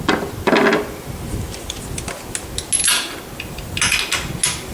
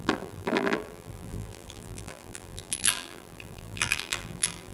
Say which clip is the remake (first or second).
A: second